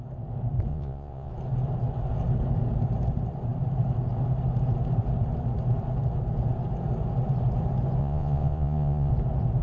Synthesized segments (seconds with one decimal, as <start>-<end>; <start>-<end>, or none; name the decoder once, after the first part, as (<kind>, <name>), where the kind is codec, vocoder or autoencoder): 0.7-1.3 (vocoder, Vocos); 8.0-9.1